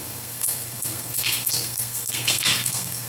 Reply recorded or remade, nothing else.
remade